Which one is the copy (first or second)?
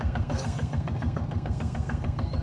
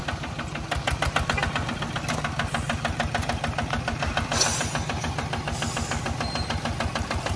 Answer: first